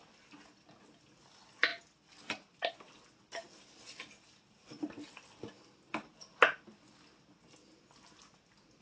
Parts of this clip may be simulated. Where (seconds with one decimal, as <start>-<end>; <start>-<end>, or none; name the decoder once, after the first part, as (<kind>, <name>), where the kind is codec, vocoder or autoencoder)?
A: none